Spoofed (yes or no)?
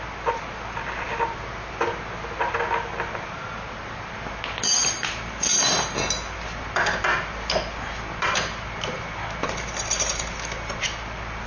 no